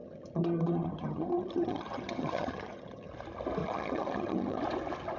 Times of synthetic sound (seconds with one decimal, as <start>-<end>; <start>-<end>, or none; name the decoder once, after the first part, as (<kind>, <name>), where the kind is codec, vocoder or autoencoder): 0.0-3.1 (vocoder, HiFi-GAN); 3.6-4.6